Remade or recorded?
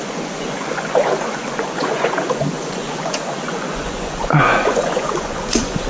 remade